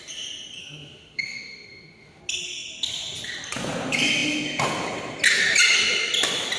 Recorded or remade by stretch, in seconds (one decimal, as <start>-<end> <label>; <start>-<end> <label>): 0.0-0.6 recorded; 0.6-2.2 remade; 2.2-6.6 recorded